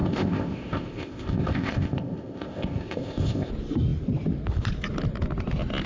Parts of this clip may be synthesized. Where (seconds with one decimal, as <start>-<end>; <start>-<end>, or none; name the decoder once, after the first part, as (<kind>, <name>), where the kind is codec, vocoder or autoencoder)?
0.0-3.5 (codec, ZipCodec)